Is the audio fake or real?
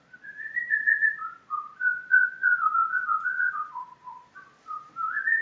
fake